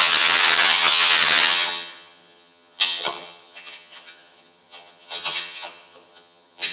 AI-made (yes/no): yes